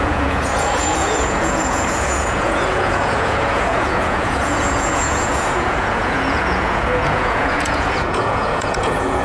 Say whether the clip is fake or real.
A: fake